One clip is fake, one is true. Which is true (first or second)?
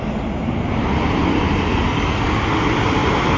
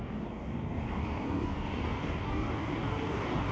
first